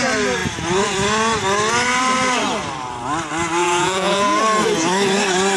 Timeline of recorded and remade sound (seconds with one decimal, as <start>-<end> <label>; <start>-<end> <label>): 0.0-3.6 recorded; 3.6-4.4 remade; 4.4-5.6 recorded